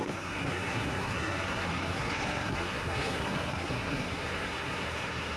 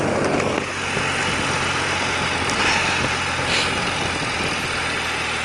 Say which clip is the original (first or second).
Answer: second